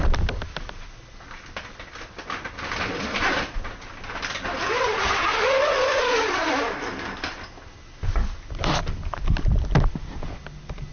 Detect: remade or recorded recorded